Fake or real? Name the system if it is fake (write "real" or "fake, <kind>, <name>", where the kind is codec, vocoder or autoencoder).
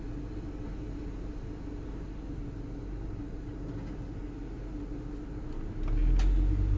real